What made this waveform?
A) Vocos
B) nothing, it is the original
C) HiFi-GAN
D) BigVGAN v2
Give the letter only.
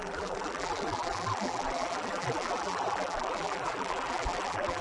D